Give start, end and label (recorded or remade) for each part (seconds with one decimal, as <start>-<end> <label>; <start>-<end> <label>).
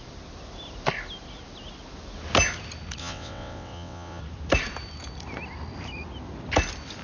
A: 0.0-3.0 recorded; 3.0-4.2 remade; 4.2-7.0 recorded